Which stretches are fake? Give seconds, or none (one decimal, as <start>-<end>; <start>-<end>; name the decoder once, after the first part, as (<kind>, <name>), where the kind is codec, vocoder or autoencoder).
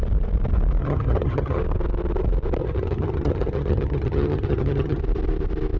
0.8-1.6 (vocoder, HiFi-GAN); 2.6-5.0